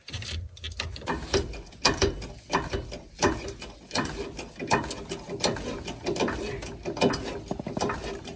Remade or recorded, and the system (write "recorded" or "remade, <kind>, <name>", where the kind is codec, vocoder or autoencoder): recorded